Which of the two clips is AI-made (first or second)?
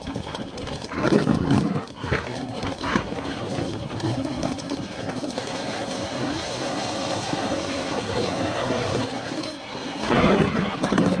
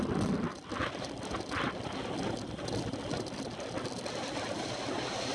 first